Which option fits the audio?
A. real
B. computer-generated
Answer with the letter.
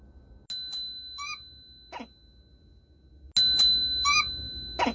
A